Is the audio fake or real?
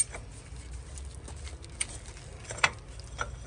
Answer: real